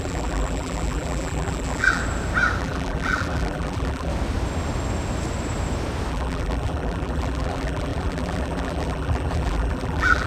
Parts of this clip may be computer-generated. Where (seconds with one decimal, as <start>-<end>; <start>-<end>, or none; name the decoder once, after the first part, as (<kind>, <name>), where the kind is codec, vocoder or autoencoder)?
0.0-2.0 (vocoder, BigVGAN v2); 2.6-4.1; 6.1-10.3